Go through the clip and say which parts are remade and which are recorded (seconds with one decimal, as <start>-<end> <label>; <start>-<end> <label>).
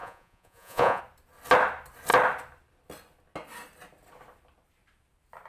0.0-1.0 remade; 1.0-5.5 recorded